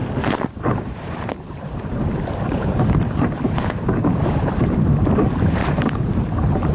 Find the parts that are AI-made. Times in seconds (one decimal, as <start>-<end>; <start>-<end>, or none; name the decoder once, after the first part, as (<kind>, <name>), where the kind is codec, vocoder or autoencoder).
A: 0.6-6.7 (vocoder, BigVGAN v2)